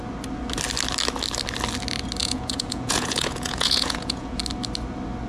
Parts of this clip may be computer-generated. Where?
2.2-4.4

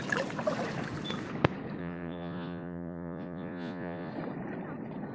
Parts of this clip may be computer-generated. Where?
1.8-4.1

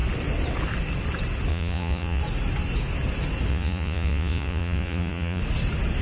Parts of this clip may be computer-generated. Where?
1.5-2.2; 3.5-5.4

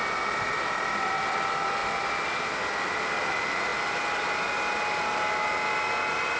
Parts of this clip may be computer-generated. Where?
none